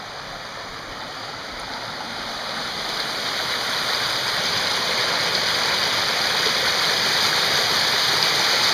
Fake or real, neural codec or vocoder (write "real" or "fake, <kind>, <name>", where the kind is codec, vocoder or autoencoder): real